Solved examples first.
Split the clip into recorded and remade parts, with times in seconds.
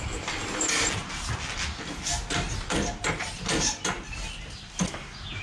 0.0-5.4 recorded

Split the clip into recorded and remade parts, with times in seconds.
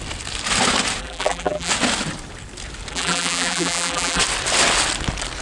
0.0-1.0 recorded; 1.0-1.7 remade; 1.7-2.9 recorded; 2.9-4.2 remade; 4.2-5.4 recorded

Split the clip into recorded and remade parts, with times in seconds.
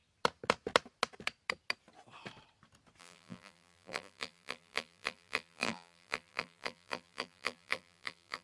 0.0-3.0 recorded; 3.0-8.4 remade